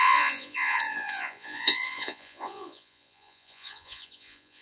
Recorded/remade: remade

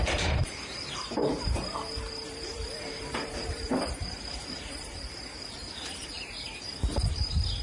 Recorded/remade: remade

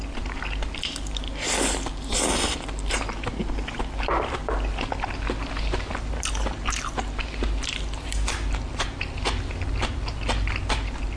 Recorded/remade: recorded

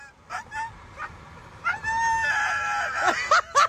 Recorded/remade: recorded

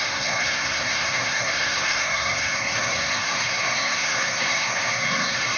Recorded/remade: remade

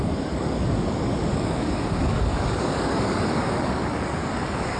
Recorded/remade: remade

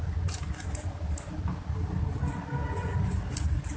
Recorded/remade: recorded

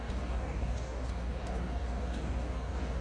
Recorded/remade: remade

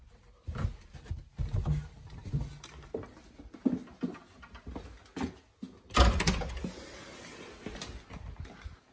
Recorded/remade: recorded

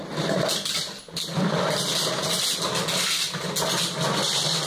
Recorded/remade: recorded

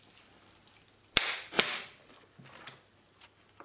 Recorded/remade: recorded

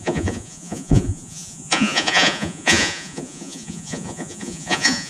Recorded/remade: remade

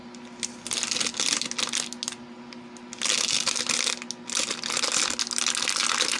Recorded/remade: recorded